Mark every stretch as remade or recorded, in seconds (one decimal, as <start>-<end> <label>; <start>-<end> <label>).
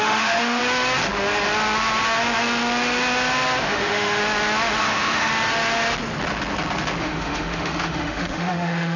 0.0-0.6 remade; 0.6-3.6 recorded; 3.6-4.2 remade; 4.2-4.8 recorded; 4.8-5.3 remade; 5.3-7.0 recorded; 7.0-9.0 remade